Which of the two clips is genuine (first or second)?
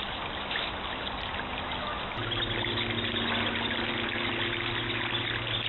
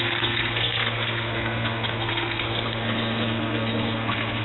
first